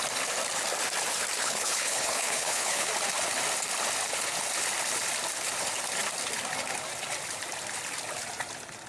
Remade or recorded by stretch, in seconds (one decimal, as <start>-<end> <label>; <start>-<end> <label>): 0.0-1.4 recorded; 1.4-2.9 remade; 2.9-8.9 recorded